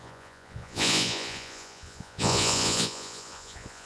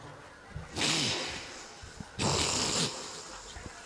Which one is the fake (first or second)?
first